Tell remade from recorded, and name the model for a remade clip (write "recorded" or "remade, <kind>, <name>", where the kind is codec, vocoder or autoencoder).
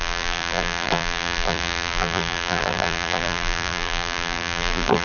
remade, vocoder, BigVGAN v2